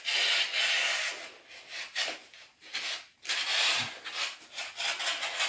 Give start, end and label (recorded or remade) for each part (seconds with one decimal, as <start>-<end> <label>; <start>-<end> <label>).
0.0-1.8 recorded; 1.8-3.8 remade; 3.8-5.5 recorded